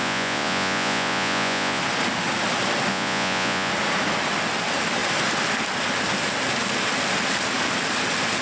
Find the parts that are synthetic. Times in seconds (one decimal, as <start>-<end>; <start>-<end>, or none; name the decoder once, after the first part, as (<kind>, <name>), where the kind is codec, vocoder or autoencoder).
0.0-1.8 (vocoder, Vocos); 2.9-3.7